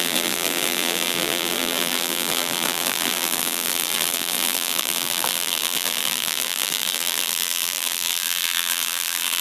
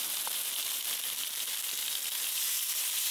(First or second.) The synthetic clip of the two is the first